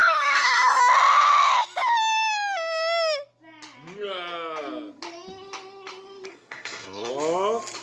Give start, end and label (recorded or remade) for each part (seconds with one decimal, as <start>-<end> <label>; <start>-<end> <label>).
0.0-0.8 remade; 0.8-6.3 recorded; 6.3-7.1 remade; 7.1-7.8 recorded